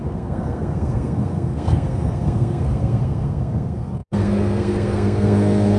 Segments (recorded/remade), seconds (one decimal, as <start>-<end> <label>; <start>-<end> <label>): 0.0-5.8 remade